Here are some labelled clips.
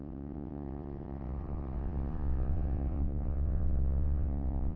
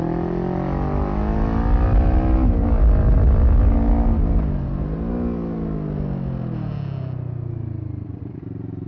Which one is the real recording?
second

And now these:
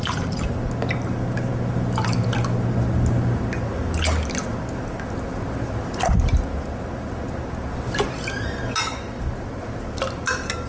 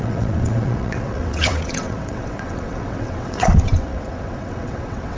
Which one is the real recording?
first